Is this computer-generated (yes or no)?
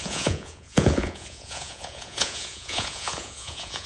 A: yes